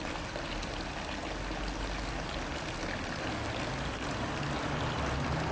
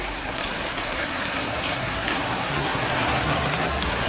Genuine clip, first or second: first